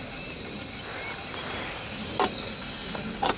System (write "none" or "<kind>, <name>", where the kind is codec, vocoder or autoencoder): none